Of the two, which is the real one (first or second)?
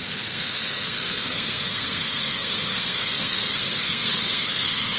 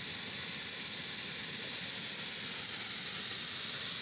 second